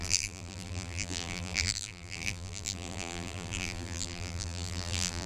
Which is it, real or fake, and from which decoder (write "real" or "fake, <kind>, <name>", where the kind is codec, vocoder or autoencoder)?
fake, vocoder, BigVGAN v2